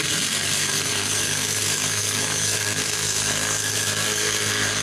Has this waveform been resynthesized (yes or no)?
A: yes